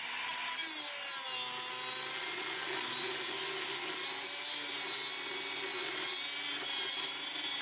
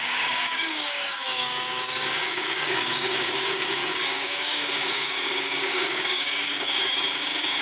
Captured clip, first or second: first